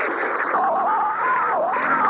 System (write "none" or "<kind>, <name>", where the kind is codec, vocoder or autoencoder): none